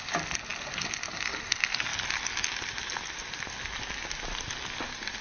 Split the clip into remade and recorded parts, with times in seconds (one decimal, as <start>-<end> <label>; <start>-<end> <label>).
0.0-5.2 recorded